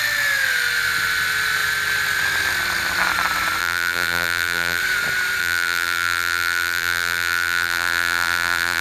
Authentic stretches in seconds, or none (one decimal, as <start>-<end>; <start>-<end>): 0.0-3.6; 4.8-5.4